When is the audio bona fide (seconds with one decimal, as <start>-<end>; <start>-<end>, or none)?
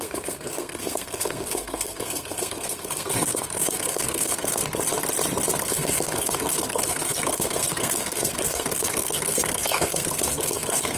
4.6-5.6